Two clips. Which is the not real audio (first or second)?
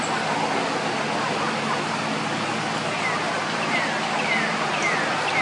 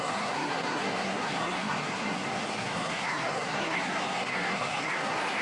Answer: second